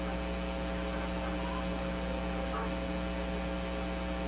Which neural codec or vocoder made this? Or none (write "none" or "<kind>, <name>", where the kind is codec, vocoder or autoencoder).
none